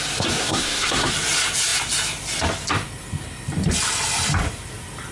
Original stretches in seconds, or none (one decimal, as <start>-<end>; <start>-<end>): 0.0-0.4; 1.1-5.1